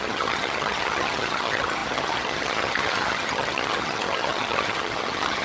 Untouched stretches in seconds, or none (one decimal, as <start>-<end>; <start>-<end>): none